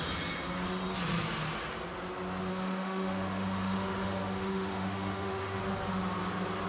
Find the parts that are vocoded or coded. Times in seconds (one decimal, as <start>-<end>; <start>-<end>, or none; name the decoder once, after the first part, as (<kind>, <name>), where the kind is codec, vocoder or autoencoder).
2.5-5.6 (autoencoder, DAC-VAE)